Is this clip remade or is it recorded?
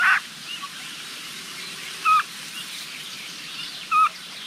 remade